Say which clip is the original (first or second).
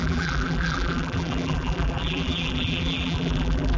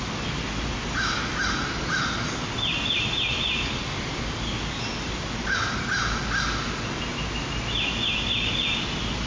second